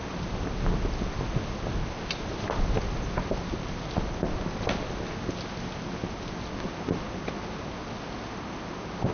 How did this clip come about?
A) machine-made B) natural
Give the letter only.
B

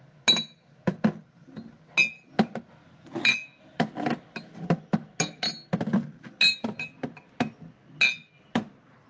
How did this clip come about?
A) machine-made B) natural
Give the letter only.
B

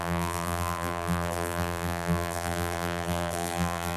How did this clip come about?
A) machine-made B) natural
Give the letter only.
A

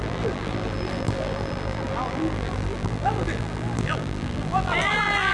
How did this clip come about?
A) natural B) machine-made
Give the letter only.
B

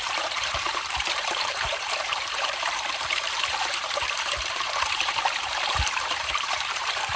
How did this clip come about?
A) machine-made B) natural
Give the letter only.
A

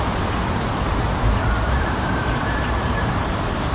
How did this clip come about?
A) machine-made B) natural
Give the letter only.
A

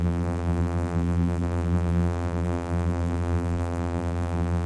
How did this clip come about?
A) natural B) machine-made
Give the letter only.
B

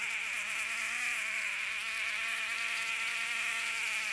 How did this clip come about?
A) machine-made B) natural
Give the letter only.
A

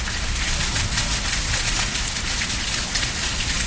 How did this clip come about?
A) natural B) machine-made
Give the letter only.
A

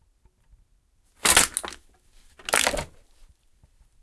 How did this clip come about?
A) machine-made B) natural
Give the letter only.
B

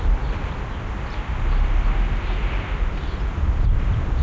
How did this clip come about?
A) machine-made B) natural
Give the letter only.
A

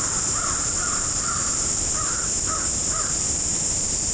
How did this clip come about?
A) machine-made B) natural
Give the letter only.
A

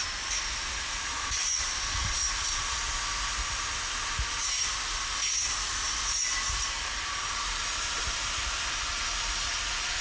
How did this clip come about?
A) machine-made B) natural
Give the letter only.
A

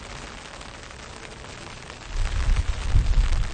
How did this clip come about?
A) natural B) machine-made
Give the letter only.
A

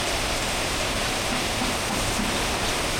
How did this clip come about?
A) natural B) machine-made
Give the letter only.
B